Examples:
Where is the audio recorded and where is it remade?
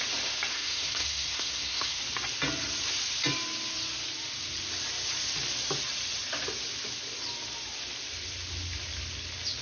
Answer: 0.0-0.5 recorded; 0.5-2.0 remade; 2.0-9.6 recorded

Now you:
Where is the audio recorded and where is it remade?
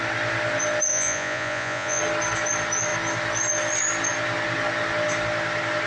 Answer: 0.0-0.9 recorded; 0.9-2.0 remade; 2.0-5.9 recorded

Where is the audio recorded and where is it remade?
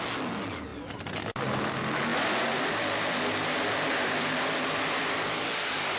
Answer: 0.0-0.7 recorded; 0.7-1.6 remade; 1.6-2.1 recorded; 2.1-6.0 remade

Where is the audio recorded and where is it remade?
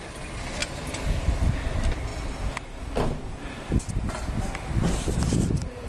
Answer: 0.0-5.9 recorded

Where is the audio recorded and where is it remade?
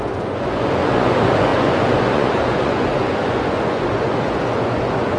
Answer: 0.0-5.2 remade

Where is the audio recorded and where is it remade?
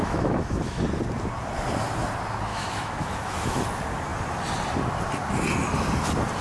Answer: 0.0-0.8 remade; 0.8-2.5 recorded; 2.5-3.6 remade; 3.6-6.4 recorded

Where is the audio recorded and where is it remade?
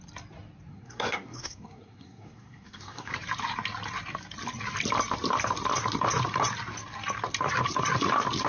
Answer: 0.0-0.7 recorded; 0.7-3.1 remade; 3.1-8.5 recorded